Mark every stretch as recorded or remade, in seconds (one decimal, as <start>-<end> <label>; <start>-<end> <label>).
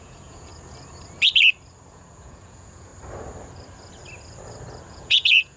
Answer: 0.0-0.5 remade; 0.5-1.9 recorded; 1.9-2.9 remade; 2.9-4.9 recorded; 4.9-5.6 remade